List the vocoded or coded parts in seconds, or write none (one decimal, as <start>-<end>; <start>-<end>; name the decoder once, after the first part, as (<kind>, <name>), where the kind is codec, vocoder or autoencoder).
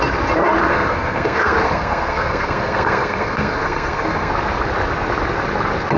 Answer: 0.7-4.3 (codec, SNAC)